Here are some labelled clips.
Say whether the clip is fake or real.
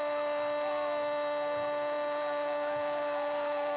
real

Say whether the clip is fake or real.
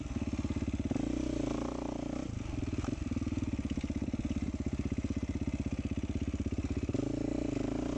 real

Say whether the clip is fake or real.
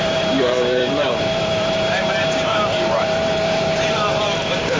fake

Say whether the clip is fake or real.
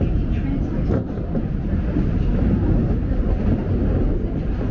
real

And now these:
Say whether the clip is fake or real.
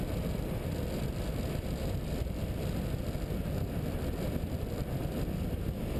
real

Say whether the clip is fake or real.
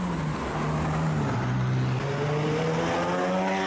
real